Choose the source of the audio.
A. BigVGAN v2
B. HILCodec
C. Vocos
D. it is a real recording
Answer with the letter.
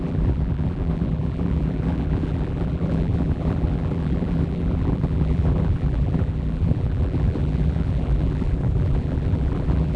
A